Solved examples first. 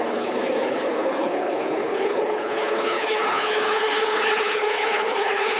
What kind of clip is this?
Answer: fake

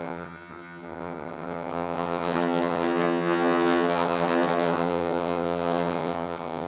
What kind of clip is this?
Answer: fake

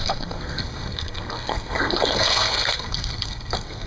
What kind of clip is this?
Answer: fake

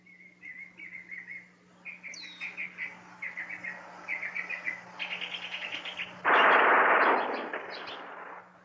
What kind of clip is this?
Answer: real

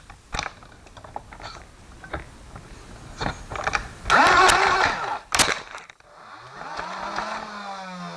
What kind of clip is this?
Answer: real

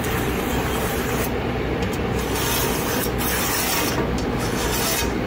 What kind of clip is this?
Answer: real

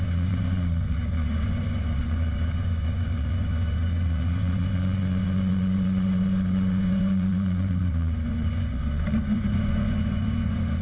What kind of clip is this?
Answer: fake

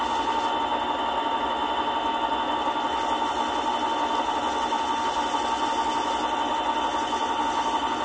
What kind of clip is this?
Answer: real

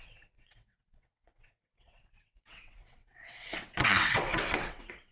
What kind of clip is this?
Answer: fake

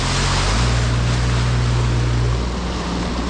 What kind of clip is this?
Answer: real